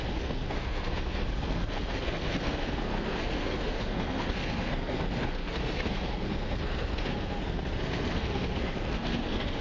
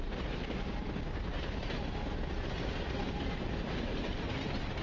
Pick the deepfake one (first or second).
first